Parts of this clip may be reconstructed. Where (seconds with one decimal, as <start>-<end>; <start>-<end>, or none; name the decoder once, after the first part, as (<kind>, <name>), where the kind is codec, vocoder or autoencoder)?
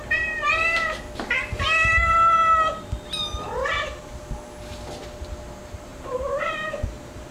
5.9-7.3 (vocoder, BigVGAN v2)